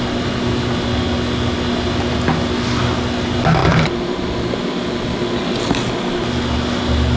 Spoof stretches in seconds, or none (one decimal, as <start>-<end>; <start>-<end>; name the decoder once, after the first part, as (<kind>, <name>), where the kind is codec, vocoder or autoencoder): 3.6-4.2 (vocoder, BigVGAN v2)